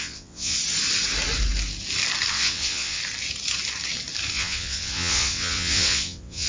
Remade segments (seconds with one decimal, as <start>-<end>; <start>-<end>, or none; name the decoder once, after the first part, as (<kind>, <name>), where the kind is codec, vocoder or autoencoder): 0.0-0.6 (vocoder, WaveNeXt); 2.3-3.0; 4.3-6.5

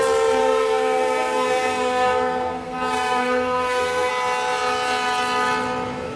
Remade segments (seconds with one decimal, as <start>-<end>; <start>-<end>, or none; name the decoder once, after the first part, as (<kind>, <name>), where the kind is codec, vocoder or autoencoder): 0.4-4.1 (codec, SNAC)

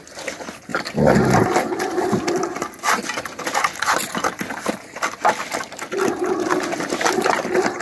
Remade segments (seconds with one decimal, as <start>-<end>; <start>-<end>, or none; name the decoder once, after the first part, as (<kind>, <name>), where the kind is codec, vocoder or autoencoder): none

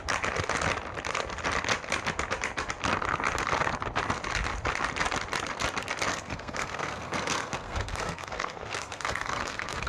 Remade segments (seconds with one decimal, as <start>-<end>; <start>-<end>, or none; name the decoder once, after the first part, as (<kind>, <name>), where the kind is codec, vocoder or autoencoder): 6.1-9.9 (codec, SNAC)

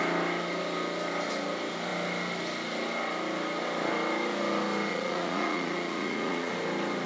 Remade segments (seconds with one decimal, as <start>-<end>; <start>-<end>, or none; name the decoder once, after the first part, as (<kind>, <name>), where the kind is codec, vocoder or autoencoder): 4.9-6.5 (vocoder, Vocos)

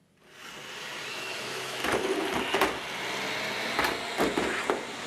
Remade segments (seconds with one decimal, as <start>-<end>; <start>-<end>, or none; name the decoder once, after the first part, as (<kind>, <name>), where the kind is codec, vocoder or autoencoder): 1.1-1.8 (autoencoder, DAC-VAE)

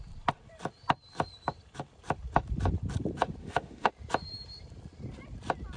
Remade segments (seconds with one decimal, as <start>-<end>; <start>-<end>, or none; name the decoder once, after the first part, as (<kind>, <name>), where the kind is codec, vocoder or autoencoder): 3.4-3.9 (autoencoder, DAC-VAE)